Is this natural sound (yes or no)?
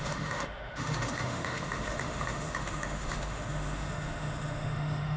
no